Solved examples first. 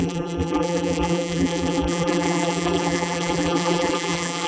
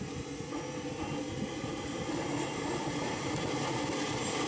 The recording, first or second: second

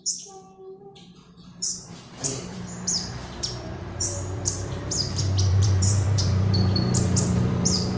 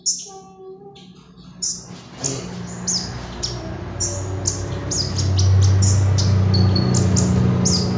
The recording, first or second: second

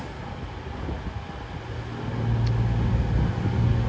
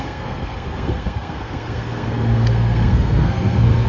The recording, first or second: first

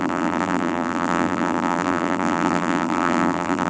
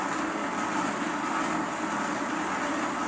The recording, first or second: second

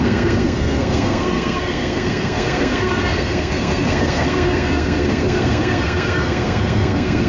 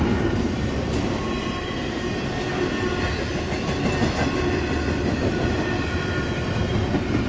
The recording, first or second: second